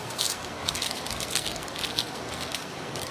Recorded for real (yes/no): no